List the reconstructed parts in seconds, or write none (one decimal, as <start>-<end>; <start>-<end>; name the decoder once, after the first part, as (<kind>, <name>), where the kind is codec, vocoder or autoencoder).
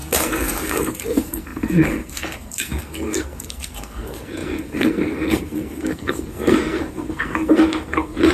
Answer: 0.0-8.3 (codec, SNAC)